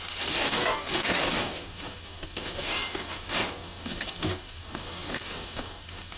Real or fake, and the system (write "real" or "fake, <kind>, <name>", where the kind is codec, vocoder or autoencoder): fake, codec, DAC